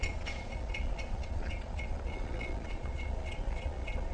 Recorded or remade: remade